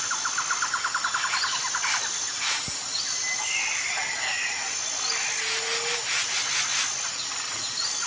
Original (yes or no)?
yes